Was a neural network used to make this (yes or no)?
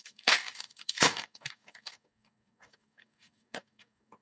yes